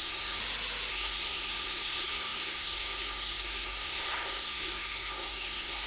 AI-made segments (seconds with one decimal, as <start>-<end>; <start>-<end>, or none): 0.0-0.4; 0.9-5.9